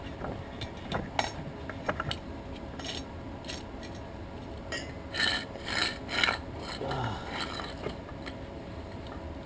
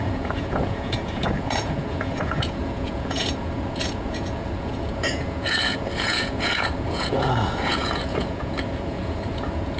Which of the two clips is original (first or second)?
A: first